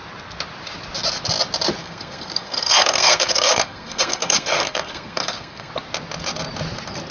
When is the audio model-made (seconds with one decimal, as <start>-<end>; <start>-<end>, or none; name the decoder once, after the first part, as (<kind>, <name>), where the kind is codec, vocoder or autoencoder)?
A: 1.8-5.7 (codec, SNAC)